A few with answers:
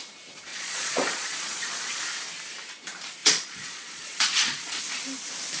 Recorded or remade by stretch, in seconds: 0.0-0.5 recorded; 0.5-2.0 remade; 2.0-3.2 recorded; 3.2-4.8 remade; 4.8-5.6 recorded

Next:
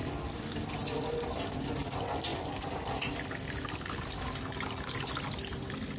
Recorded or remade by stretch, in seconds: 0.0-6.0 recorded

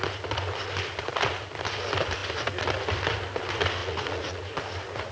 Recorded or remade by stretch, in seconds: 0.0-3.8 recorded; 3.8-4.4 remade; 4.4-5.1 recorded

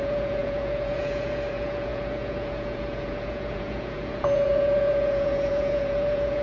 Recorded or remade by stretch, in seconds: 0.0-6.4 remade

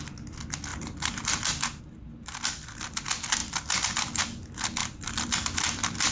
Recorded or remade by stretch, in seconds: 0.0-0.7 recorded; 0.7-1.8 remade; 1.8-3.4 recorded; 3.4-4.2 remade; 4.2-4.8 recorded; 4.8-5.6 remade; 5.6-6.1 recorded

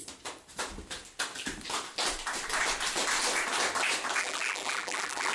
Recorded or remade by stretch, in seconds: 0.0-4.2 recorded; 4.2-5.3 remade

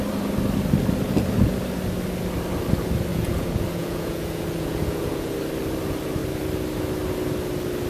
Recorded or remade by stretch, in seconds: 0.0-3.1 recorded; 3.1-5.3 remade; 5.3-7.9 recorded